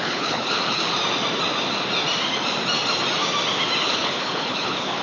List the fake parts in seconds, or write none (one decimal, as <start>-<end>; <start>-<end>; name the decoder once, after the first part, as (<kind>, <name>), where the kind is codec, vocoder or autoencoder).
0.0-0.8 (codec, HILCodec); 3.8-5.0